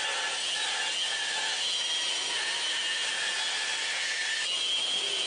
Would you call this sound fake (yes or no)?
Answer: no